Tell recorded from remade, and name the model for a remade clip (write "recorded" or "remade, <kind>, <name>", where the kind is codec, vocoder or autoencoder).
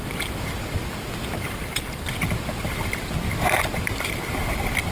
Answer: recorded